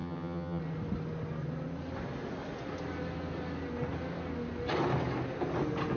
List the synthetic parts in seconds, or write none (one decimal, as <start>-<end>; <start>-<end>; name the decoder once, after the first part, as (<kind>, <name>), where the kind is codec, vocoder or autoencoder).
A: 0.0-0.6 (vocoder, HiFi-GAN)